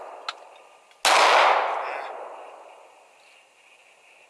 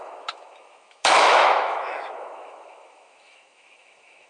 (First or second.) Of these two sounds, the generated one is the second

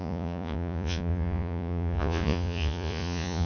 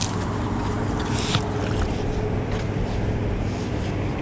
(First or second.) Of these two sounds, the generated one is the first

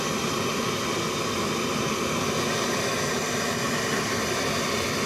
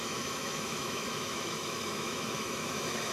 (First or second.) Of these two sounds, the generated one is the second